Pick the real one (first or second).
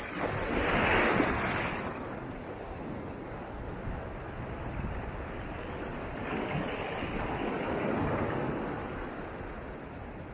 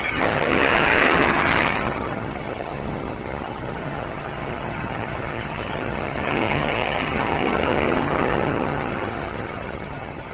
first